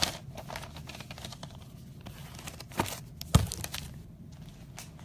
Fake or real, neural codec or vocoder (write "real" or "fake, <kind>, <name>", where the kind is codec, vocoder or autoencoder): real